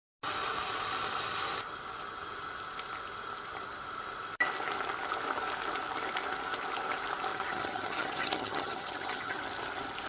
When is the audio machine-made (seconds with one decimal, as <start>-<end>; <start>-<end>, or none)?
7.3-9.4